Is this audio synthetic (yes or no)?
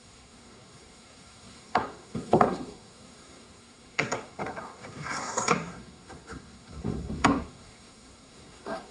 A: yes